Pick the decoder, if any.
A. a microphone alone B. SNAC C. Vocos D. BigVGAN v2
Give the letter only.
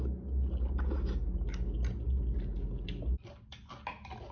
A